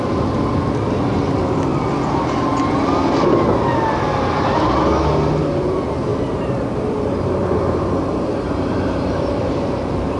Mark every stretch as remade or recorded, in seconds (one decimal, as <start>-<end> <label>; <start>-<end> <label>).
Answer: 0.0-6.1 recorded; 6.1-10.2 remade